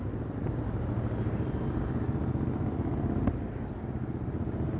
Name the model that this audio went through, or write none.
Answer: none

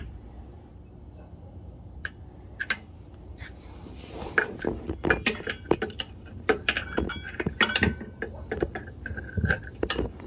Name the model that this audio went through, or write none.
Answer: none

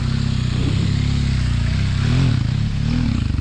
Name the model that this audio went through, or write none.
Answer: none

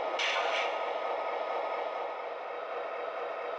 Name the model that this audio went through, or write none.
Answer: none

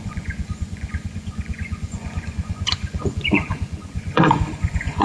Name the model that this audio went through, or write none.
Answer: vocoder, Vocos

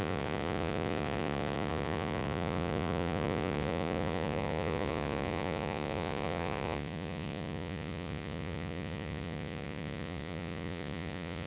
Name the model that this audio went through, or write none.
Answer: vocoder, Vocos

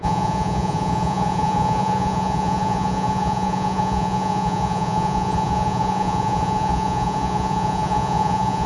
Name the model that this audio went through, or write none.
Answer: vocoder, Vocos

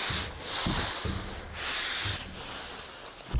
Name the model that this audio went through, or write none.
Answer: none